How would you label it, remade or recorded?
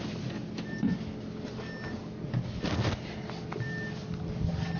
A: recorded